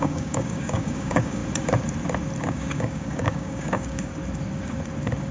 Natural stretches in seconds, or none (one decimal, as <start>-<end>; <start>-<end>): 1.4-2.4; 4.1-5.3